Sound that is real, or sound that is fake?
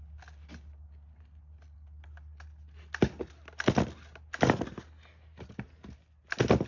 real